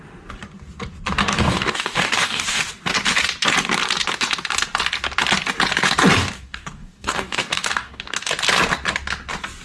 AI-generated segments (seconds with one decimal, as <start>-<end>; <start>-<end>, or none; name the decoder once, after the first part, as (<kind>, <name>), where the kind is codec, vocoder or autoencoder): 1.2-2.6 (codec, DAC); 6.2-8.3